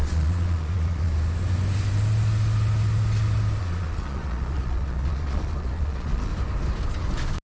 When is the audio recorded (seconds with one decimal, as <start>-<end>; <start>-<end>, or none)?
1.1-3.6; 6.3-7.4